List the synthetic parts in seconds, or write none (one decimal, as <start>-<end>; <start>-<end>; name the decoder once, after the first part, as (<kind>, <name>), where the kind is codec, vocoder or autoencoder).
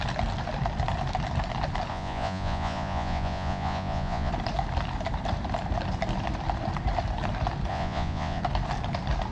1.9-4.3 (vocoder, Vocos); 7.7-8.4